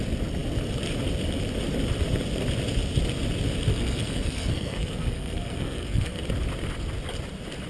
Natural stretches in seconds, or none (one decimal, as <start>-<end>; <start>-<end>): 0.0-3.7; 6.2-7.7